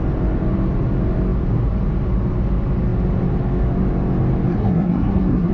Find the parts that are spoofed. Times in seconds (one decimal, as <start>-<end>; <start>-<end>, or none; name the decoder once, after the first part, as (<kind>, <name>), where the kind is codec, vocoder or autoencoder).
4.5-5.5 (codec, SNAC)